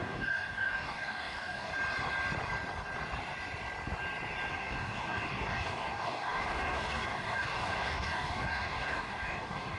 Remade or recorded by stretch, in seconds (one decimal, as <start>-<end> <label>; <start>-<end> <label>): 0.0-1.7 remade; 1.7-4.5 recorded; 4.5-9.8 remade